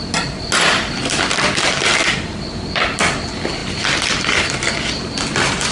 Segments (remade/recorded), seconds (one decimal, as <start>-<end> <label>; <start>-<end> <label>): 0.0-5.7 recorded